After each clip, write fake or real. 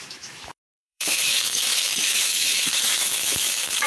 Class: fake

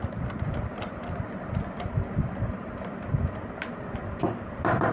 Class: real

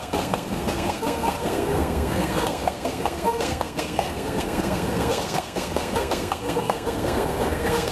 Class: fake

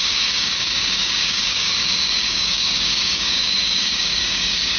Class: fake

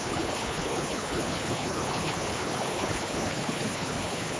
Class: fake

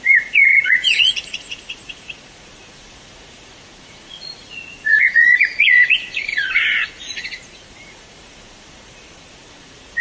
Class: fake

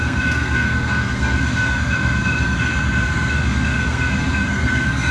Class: fake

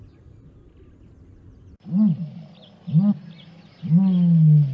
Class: real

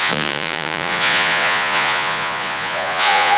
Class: fake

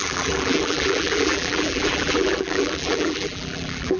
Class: fake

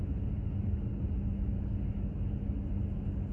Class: real